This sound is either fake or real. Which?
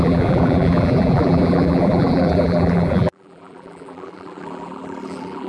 fake